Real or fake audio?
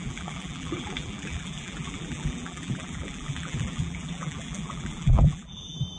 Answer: fake